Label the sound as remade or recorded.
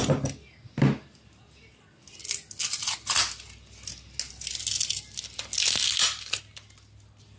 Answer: recorded